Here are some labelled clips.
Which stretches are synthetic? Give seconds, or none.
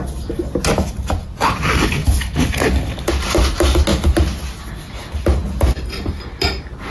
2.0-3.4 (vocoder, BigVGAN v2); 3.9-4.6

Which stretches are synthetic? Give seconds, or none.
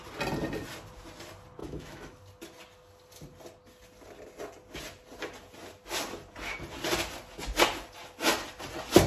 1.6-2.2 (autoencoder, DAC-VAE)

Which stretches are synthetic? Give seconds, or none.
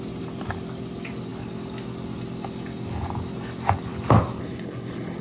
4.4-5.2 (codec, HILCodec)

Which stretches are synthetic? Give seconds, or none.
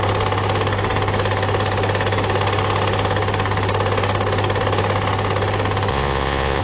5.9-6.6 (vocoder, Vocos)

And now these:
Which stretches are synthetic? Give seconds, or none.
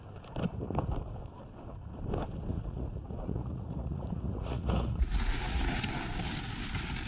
2.5-5.8 (vocoder, Vocos)